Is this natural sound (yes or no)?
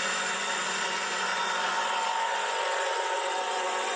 no